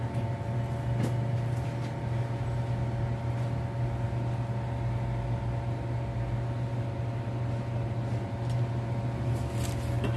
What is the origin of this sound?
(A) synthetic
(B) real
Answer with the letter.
B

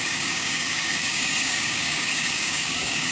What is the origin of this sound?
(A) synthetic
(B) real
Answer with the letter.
A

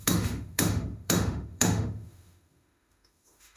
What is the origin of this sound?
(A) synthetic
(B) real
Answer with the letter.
A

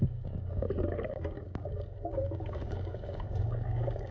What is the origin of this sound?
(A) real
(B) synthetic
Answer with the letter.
B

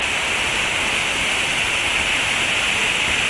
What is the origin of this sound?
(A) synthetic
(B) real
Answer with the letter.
B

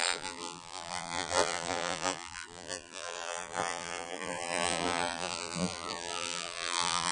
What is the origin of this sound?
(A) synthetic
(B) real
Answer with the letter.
A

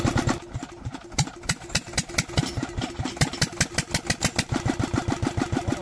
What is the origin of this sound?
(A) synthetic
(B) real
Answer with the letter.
B